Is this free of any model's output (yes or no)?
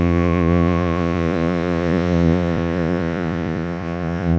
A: no